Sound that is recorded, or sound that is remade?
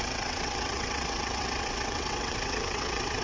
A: remade